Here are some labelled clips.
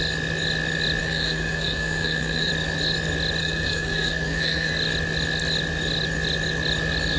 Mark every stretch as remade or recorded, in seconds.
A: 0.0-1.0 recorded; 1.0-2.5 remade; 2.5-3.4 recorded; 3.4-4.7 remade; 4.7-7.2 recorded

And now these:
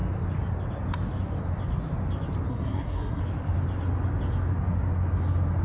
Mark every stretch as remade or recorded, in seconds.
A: 0.0-2.5 recorded; 2.5-3.2 remade; 3.2-5.6 recorded

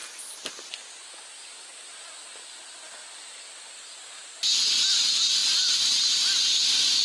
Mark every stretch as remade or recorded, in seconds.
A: 0.0-7.0 recorded

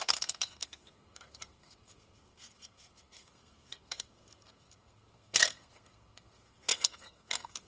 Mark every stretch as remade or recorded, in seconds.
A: 0.0-7.7 remade

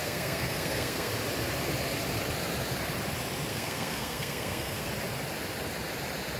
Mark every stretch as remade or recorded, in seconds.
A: 0.0-1.1 remade; 1.1-3.5 recorded; 3.5-4.9 remade; 4.9-6.4 recorded

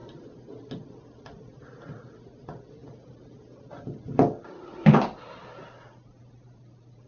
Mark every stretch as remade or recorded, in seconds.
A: 0.0-7.1 recorded

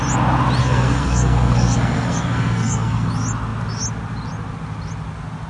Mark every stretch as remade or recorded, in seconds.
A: 0.0-0.6 recorded; 0.6-3.1 remade; 3.1-5.5 recorded

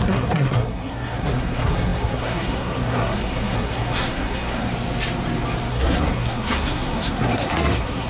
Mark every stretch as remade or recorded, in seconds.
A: 0.0-4.7 remade; 4.7-5.7 recorded; 5.7-8.1 remade